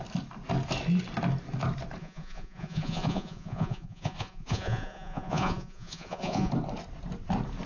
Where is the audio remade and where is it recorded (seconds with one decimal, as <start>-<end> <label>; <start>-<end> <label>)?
0.0-2.0 recorded; 2.0-6.5 remade; 6.5-7.7 recorded